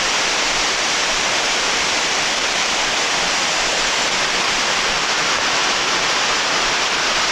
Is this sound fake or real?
fake